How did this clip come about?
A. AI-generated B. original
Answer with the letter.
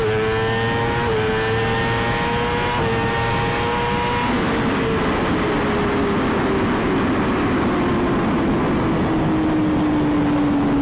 B